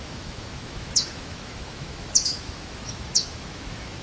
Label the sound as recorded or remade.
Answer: remade